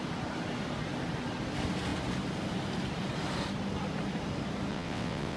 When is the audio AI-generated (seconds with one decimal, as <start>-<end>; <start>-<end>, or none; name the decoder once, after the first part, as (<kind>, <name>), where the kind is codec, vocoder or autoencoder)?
4.7-5.4 (vocoder, WaveNeXt)